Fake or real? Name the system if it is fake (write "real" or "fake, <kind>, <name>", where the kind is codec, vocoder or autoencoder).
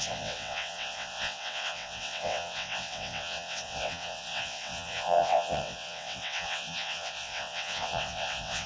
fake, vocoder, WaveNeXt